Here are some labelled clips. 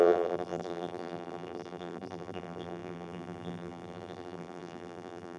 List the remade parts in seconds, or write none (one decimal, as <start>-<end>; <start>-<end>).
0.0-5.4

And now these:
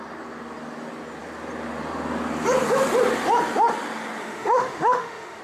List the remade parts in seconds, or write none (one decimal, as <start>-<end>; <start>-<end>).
4.2-5.4

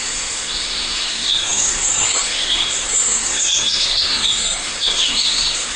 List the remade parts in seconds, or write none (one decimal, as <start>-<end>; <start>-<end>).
0.0-5.8

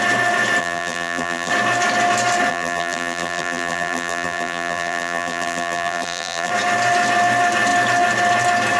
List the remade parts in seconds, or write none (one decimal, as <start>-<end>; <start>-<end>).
0.6-1.5; 2.5-6.5

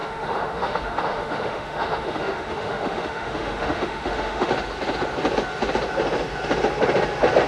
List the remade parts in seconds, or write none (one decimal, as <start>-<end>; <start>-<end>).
0.0-4.5